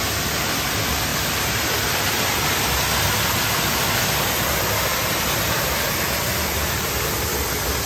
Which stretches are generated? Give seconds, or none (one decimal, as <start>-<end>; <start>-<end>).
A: 1.1-2.4; 4.9-6.9